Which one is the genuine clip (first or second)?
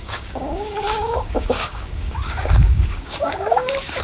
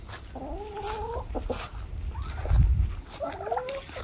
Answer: second